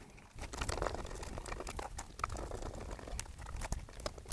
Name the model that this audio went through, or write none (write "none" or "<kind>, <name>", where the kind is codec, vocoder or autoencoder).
none